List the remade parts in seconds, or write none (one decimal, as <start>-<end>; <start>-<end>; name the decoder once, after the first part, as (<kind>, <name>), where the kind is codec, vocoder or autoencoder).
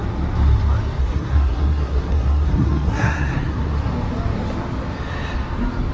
1.0-3.7 (codec, SNAC)